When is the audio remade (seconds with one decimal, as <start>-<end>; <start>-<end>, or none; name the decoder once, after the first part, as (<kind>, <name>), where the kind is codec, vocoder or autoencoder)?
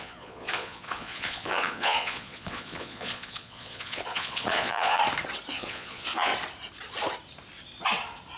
0.0-5.0 (vocoder, Vocos); 5.5-6.3